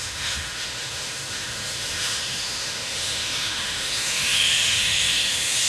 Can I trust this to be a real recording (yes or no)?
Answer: no